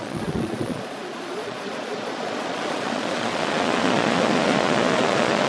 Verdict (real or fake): fake